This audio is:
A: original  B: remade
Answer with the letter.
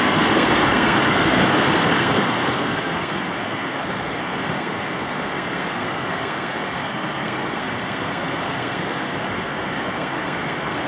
B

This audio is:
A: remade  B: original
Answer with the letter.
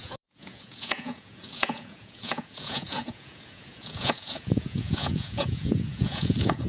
A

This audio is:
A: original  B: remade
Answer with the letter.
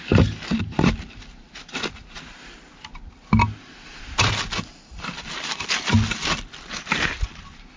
A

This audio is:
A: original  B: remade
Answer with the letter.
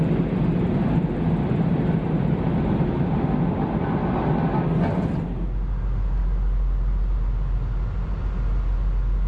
A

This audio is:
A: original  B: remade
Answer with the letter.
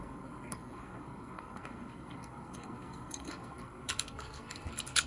B